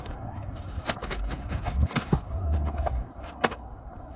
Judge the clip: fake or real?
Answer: fake